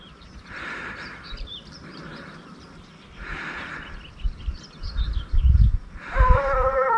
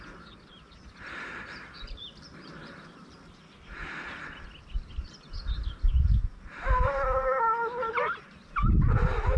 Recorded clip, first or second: second